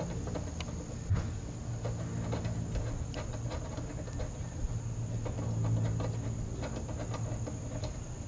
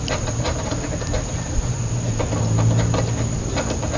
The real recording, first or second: first